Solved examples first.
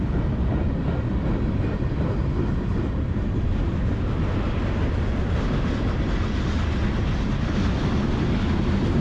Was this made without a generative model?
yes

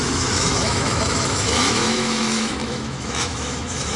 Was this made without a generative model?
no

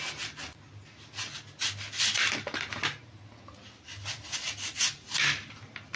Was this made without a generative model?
yes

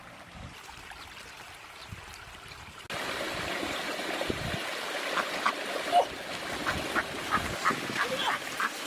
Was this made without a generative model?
yes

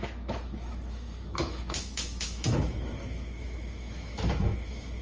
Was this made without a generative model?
no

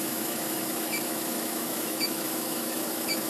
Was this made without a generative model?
no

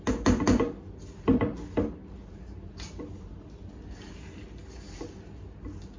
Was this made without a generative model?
yes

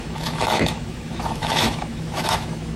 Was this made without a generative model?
no